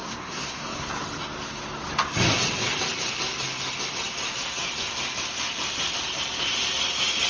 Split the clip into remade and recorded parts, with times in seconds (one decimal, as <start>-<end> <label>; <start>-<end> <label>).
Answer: 0.0-0.9 remade; 0.9-7.3 recorded

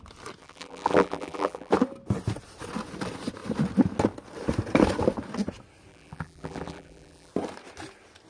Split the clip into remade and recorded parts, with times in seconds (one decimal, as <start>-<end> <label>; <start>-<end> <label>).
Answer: 0.0-0.4 recorded; 0.4-1.7 remade; 1.7-5.9 recorded; 5.9-7.3 remade; 7.3-8.3 recorded